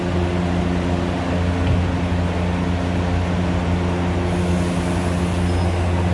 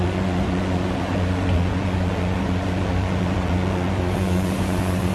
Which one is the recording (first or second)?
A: first